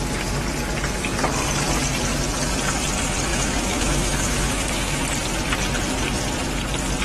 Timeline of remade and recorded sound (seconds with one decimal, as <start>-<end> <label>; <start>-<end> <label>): 0.0-3.3 recorded; 3.3-5.0 remade; 5.0-7.0 recorded

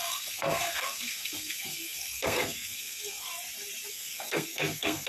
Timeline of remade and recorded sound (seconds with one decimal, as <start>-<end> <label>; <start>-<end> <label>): 0.0-3.3 remade; 3.3-3.9 recorded; 3.9-5.1 remade

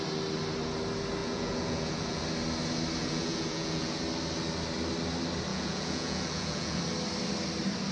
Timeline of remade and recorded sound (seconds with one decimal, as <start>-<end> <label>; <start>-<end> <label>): 0.0-1.2 recorded; 1.2-2.2 remade; 2.2-3.0 recorded; 3.0-4.0 remade; 4.0-5.5 recorded; 5.5-6.8 remade; 6.8-7.9 recorded